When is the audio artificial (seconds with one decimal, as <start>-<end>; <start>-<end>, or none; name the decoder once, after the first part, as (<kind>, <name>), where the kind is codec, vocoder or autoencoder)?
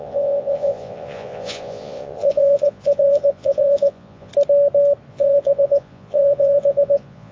0.0-4.3 (vocoder, Vocos); 5.1-7.3